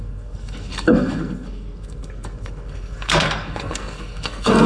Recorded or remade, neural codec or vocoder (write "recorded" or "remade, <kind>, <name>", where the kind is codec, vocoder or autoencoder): remade, codec, SNAC